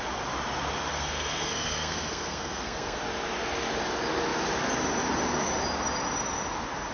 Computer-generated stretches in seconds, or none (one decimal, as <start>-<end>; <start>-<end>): 0.9-3.0